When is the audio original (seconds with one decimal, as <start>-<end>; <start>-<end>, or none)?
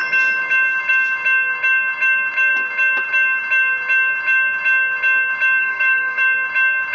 0.0-5.6; 6.2-6.9